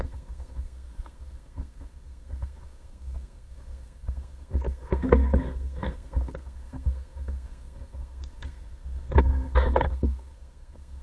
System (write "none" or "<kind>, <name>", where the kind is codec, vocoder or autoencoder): codec, SNAC